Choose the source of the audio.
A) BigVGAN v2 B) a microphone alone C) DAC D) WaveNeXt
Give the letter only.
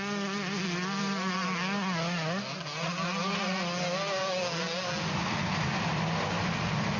B